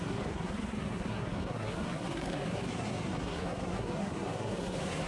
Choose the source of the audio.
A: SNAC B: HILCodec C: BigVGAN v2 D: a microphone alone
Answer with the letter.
A